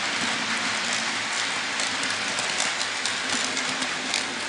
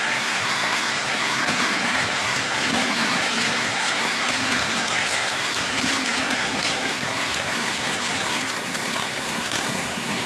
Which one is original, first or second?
first